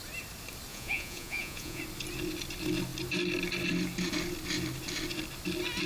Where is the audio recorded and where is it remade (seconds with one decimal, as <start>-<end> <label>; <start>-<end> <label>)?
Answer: 0.0-0.7 recorded; 0.7-1.8 remade; 1.8-5.9 recorded